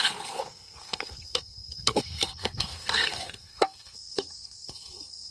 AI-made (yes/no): yes